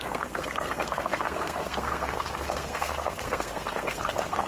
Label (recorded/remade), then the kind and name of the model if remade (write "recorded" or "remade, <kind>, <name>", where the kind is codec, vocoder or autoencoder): remade, codec, SNAC